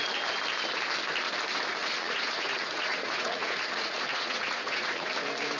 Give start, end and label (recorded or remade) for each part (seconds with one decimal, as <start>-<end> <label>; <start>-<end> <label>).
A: 0.0-1.8 recorded; 1.8-5.1 remade; 5.1-5.6 recorded